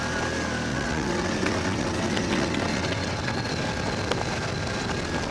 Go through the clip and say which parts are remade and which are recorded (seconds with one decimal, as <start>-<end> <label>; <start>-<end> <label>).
0.0-0.7 recorded; 0.7-3.5 remade; 3.5-5.3 recorded